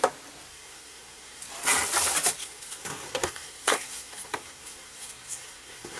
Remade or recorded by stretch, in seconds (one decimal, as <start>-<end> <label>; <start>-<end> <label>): 0.0-0.5 recorded; 0.5-1.4 remade; 1.4-2.4 recorded; 2.4-6.0 remade